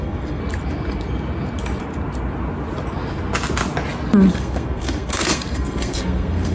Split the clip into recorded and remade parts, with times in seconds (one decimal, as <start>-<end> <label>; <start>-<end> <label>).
0.0-0.4 remade; 0.4-4.3 recorded; 4.3-6.5 remade